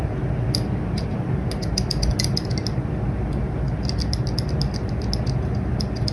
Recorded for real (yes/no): yes